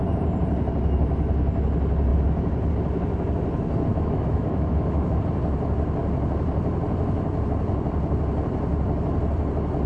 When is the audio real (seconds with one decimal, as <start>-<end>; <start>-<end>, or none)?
0.0-3.9; 5.2-9.9